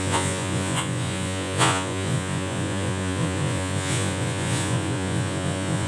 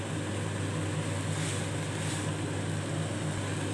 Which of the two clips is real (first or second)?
second